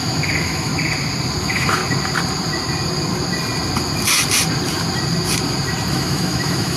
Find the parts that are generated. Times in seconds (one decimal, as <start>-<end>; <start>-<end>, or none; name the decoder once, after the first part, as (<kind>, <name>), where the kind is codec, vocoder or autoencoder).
0.0-0.7 (autoencoder, DAC-VAE); 1.4-1.8; 5.9-6.8